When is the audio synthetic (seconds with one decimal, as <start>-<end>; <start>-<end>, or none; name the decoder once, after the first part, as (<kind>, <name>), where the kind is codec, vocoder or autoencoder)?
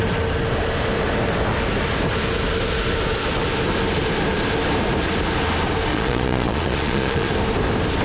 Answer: 5.9-7.3 (vocoder, Vocos)